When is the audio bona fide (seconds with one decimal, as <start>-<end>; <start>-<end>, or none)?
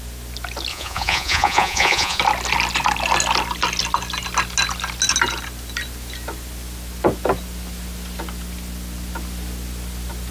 0.0-0.7; 2.2-10.3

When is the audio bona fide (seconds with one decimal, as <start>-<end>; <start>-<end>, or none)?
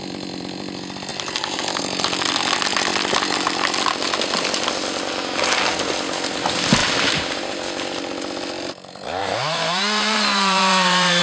0.0-1.1; 1.8-6.8; 7.6-9.2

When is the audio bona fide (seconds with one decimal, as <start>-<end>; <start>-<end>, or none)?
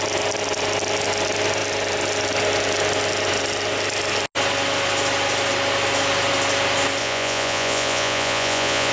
0.0-7.0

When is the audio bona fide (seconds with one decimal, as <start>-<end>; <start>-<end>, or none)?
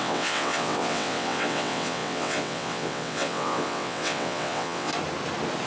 4.9-5.7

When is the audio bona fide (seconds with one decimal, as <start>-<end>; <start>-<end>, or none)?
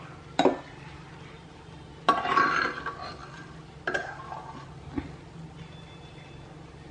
0.0-6.9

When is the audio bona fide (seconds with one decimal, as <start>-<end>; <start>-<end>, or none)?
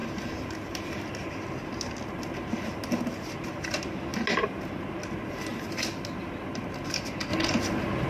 1.1-5.5; 6.0-8.1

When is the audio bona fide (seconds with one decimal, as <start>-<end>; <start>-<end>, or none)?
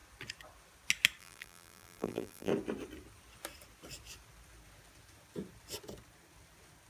0.0-1.2; 2.5-6.9